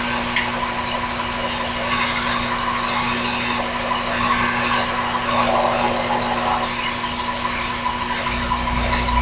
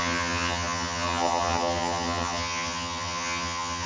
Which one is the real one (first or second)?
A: first